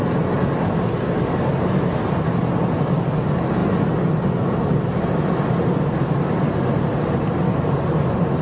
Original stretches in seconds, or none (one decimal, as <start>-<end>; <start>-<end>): 0.0-8.4